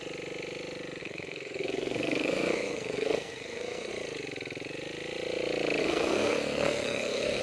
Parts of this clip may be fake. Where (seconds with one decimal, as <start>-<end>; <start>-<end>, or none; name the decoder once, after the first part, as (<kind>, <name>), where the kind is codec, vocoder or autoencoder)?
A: 1.0-3.9 (codec, SNAC); 5.8-7.4